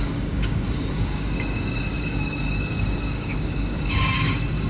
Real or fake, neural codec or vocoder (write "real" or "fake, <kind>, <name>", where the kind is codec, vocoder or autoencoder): fake, codec, DAC